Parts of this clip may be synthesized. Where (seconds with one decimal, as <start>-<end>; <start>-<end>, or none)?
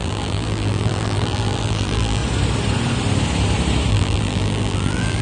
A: 0.0-2.2; 3.9-5.2